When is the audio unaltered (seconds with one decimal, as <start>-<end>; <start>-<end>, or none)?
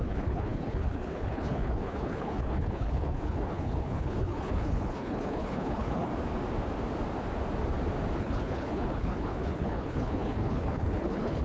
6.1-8.2